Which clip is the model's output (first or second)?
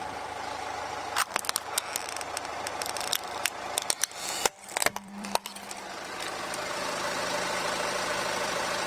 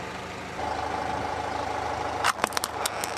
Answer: first